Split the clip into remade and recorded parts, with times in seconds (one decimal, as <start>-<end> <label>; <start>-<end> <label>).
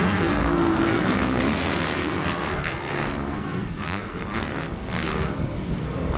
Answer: 0.0-6.2 remade